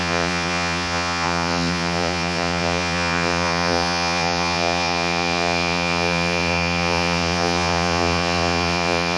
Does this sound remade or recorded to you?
remade